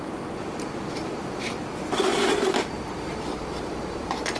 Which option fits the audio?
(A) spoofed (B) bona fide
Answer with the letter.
A